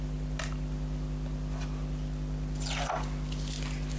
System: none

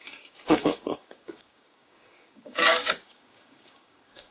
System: codec, DAC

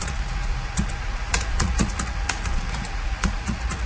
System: vocoder, Vocos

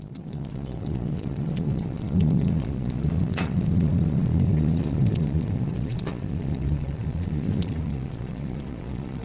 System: vocoder, Vocos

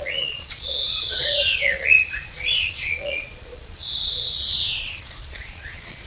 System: vocoder, Vocos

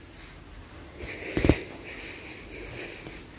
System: none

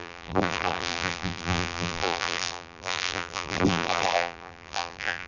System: vocoder, BigVGAN v2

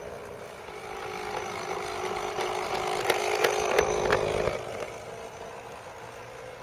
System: none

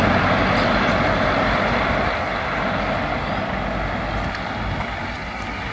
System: none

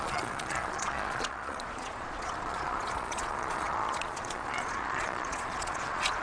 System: vocoder, Vocos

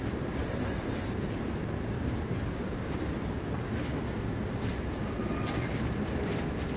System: none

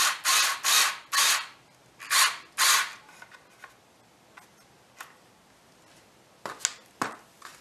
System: none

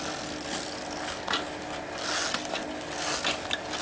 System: none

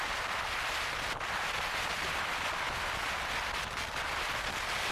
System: vocoder, BigVGAN v2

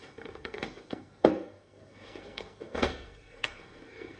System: codec, SNAC